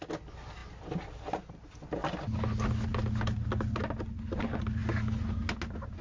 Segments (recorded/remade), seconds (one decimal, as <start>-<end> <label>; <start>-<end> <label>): 0.0-6.0 recorded

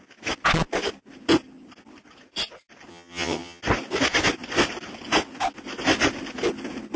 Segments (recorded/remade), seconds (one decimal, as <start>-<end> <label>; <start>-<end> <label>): 0.0-2.9 recorded; 2.9-3.6 remade; 3.6-7.0 recorded